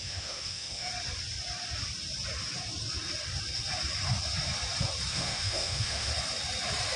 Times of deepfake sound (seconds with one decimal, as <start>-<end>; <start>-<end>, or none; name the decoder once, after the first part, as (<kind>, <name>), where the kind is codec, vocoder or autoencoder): 0.0-0.9 (autoencoder, DAC-VAE); 5.1-6.1